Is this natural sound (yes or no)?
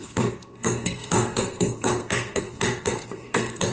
no